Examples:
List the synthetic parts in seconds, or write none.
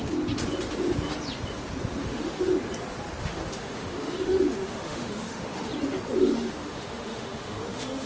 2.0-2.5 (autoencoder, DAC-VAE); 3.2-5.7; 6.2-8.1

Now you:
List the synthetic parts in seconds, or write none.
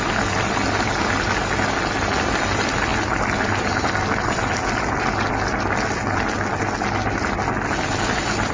none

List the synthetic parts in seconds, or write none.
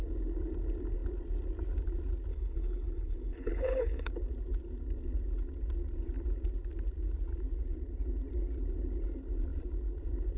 2.3-4.1 (codec, HILCodec)